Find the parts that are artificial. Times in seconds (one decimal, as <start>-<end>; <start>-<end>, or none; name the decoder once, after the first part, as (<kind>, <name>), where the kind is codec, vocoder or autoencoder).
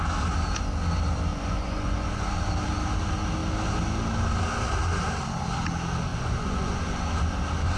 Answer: 1.3-2.2 (vocoder, Vocos); 6.1-6.8